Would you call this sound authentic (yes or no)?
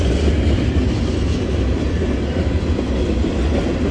yes